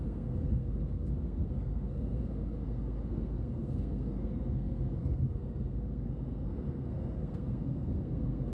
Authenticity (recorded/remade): remade